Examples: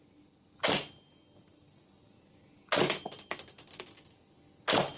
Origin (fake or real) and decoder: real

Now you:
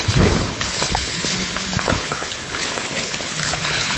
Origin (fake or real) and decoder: fake, codec, HILCodec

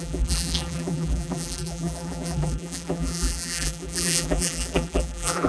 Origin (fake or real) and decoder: fake, vocoder, BigVGAN v2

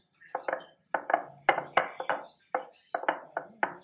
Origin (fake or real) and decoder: real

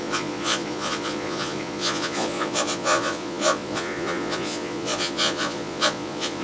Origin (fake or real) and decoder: fake, vocoder, Vocos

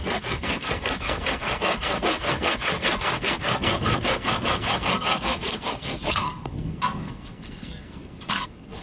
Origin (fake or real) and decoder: fake, codec, SNAC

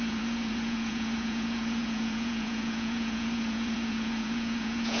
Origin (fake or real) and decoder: fake, vocoder, Vocos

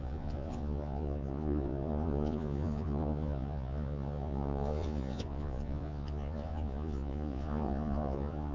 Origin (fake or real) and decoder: fake, vocoder, Vocos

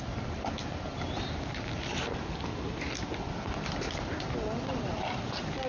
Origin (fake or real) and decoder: real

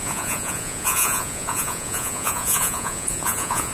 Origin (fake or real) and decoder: fake, vocoder, Vocos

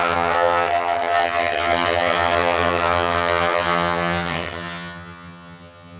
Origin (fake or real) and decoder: fake, vocoder, HiFi-GAN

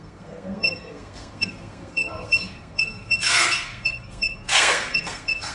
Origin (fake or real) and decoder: fake, codec, SNAC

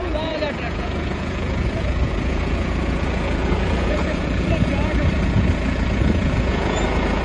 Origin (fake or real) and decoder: fake, vocoder, Vocos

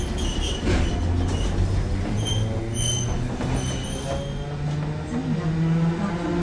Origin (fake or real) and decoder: real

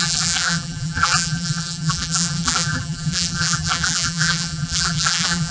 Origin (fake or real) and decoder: fake, vocoder, BigVGAN v2